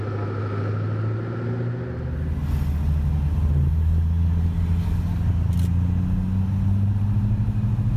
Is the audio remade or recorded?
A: recorded